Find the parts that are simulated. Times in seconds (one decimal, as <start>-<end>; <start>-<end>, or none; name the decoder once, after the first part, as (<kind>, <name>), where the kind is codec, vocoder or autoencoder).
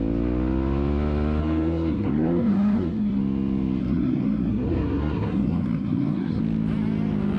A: 1.4-3.2 (codec, SNAC); 3.8-6.4